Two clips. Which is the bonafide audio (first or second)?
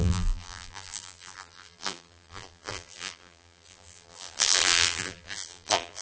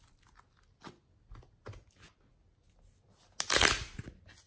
second